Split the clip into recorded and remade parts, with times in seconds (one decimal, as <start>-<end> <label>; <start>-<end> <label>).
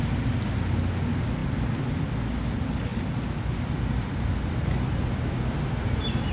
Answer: 0.0-1.4 recorded; 1.4-2.2 remade; 2.2-2.9 recorded; 2.9-4.5 remade; 4.5-6.3 recorded